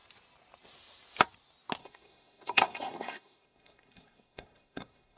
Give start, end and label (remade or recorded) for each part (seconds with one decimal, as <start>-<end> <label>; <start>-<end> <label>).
0.0-1.8 recorded; 1.8-5.2 remade